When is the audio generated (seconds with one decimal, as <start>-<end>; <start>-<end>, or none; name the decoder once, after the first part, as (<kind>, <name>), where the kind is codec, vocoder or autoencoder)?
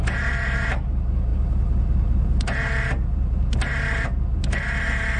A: none